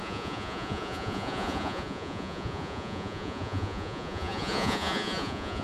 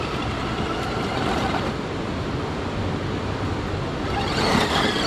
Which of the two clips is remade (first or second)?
first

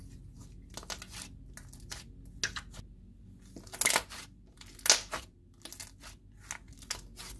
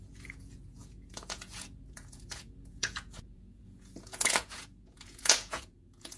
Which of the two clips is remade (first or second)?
second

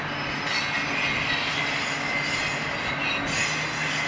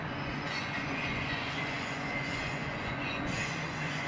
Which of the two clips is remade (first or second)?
second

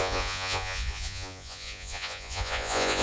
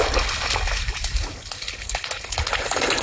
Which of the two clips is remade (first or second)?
first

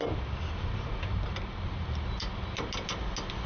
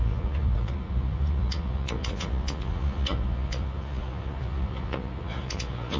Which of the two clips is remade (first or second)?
second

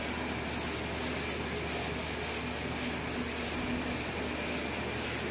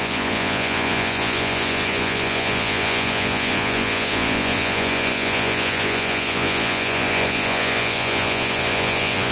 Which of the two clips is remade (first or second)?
second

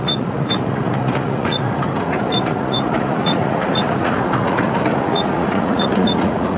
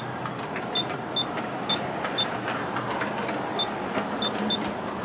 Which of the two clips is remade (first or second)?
first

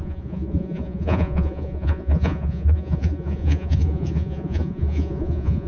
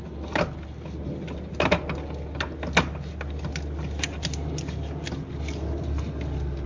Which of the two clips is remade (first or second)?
first